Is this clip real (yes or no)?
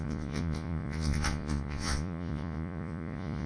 no